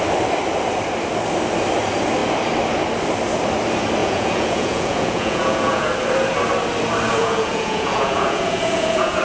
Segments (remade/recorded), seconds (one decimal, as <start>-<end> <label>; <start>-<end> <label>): 0.0-4.0 recorded; 4.0-5.9 remade; 5.9-7.1 recorded; 7.1-9.2 remade